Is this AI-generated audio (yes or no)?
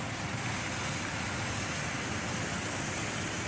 no